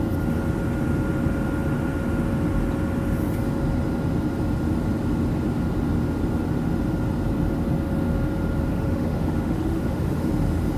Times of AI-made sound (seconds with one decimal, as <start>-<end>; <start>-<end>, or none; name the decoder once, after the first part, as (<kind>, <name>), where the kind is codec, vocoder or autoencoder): 8.7-10.3 (autoencoder, DAC-VAE)